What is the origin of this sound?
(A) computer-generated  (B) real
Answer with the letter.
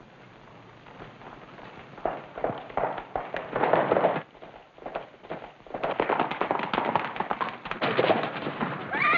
B